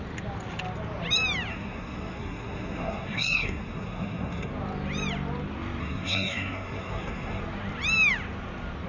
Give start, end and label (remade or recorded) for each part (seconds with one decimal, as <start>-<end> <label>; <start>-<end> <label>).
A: 0.0-1.5 recorded; 1.5-4.5 remade; 4.5-5.8 recorded; 5.8-7.4 remade; 7.4-8.9 recorded